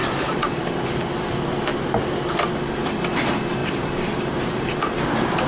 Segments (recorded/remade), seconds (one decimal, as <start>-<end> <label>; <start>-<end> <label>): 0.0-0.7 remade; 0.7-1.7 recorded; 1.7-2.2 remade; 2.2-3.6 recorded; 3.6-5.0 remade; 5.0-5.5 recorded